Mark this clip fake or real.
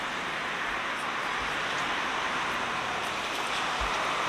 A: fake